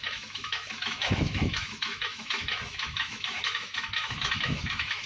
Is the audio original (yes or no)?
no